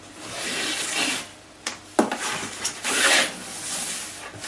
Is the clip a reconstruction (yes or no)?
no